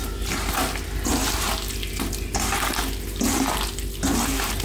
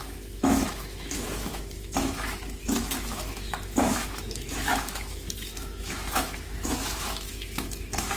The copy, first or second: second